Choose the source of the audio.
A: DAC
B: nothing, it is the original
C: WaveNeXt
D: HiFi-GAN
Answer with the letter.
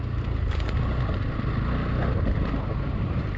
B